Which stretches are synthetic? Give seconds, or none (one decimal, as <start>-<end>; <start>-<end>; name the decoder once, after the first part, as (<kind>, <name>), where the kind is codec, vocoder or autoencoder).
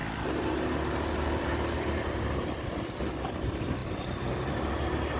none